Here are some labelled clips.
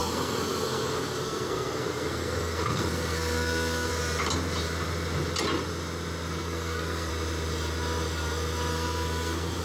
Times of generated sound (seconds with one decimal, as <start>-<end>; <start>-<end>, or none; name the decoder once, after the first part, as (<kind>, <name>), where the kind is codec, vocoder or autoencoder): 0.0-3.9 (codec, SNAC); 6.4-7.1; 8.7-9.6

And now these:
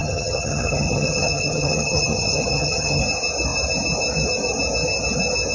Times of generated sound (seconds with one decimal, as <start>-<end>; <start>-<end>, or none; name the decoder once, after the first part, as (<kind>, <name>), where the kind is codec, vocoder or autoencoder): 0.0-3.0 (vocoder, HiFi-GAN)

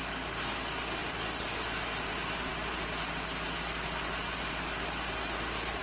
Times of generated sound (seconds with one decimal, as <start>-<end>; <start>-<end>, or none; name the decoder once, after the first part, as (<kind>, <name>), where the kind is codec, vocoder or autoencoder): 1.0-2.1 (vocoder, BigVGAN v2)

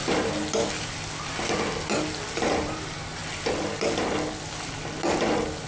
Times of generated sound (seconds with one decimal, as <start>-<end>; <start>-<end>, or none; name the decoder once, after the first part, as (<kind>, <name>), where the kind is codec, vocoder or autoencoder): 2.3-3.2 (vocoder, BigVGAN v2)